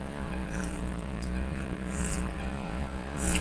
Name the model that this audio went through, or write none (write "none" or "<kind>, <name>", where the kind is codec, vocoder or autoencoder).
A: vocoder, Vocos